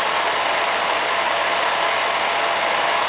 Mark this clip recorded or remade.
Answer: recorded